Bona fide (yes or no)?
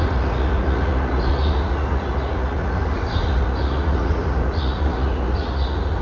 no